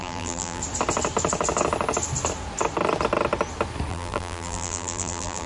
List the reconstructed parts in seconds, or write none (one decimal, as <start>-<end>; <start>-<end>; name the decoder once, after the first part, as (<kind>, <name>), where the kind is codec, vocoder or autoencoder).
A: 0.0-0.6 (vocoder, BigVGAN v2); 3.9-5.5